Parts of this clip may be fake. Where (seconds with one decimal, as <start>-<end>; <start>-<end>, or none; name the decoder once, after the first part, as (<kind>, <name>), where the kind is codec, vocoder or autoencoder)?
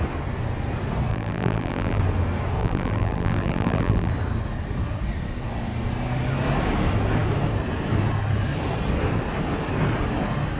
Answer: 1.1-2.0 (vocoder, BigVGAN v2); 2.6-4.1